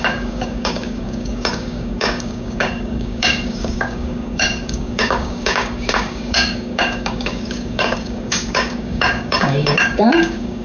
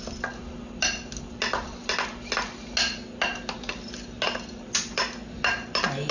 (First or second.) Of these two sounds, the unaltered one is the second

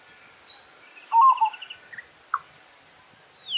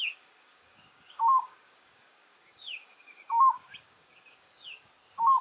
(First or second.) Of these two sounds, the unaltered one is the first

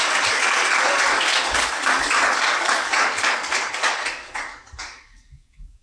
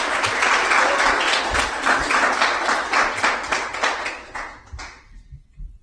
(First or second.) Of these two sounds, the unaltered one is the second